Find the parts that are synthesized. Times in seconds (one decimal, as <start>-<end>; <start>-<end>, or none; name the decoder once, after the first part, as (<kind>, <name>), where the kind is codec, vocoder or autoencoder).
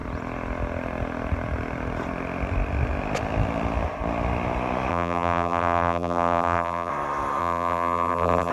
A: 4.9-6.9 (vocoder, BigVGAN v2); 7.4-8.5